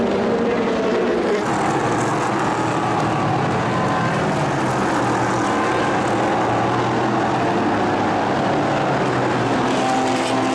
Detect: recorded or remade recorded